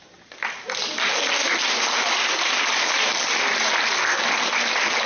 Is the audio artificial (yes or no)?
no